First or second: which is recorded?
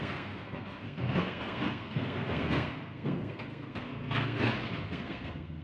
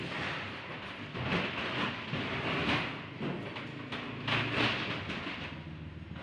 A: second